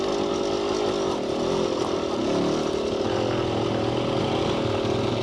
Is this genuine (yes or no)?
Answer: yes